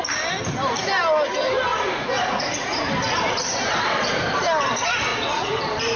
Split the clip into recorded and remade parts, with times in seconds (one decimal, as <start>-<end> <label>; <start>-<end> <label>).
0.0-1.7 recorded; 1.7-2.8 remade; 2.8-5.1 recorded; 5.1-5.6 remade; 5.6-6.0 recorded